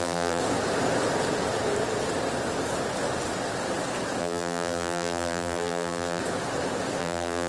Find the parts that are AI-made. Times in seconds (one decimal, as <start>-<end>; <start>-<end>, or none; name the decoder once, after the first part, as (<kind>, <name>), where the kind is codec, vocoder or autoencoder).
0.0-0.4 (vocoder, BigVGAN v2); 4.2-6.2; 7.0-7.5